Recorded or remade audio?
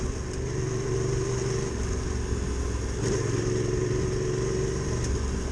recorded